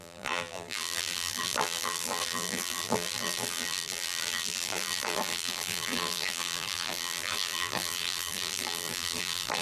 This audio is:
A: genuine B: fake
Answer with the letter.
B